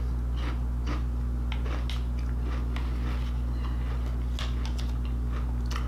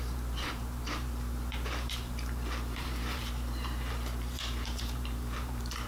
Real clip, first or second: first